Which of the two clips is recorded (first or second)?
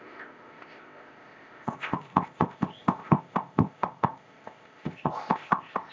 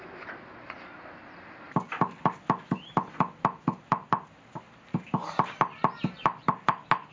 second